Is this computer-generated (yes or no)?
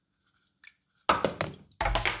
no